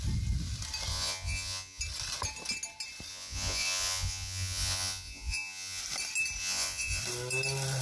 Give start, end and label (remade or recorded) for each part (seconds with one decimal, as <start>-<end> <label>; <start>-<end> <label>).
0.0-0.9 recorded; 0.9-1.8 remade; 1.8-3.1 recorded; 3.1-5.8 remade; 5.8-6.4 recorded; 6.4-7.0 remade; 7.0-7.8 recorded